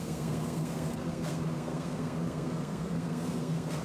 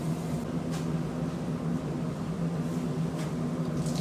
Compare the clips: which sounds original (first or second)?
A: second